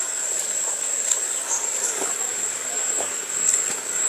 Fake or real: fake